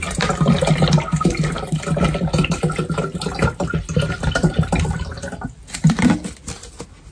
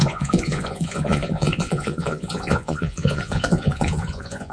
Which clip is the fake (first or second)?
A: second